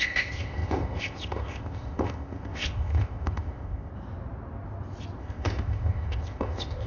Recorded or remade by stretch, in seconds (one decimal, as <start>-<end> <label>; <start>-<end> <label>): 0.0-3.9 remade; 3.9-5.2 recorded; 5.2-6.9 remade